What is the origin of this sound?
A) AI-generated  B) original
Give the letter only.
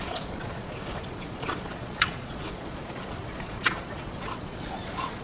A